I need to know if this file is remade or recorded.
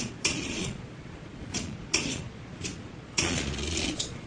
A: remade